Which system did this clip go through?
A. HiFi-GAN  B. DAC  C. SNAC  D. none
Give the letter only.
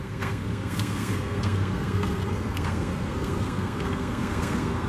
C